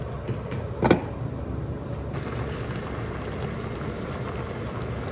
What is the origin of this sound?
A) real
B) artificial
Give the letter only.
A